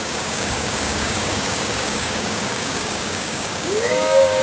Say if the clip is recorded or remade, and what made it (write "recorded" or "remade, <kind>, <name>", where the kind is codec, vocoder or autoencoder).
remade, codec, DAC